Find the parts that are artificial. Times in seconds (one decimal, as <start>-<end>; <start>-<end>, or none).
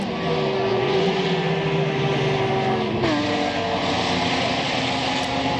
0.7-1.5